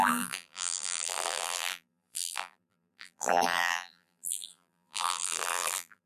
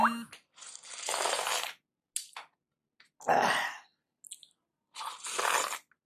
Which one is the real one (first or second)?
second